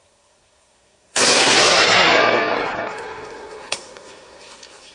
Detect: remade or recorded remade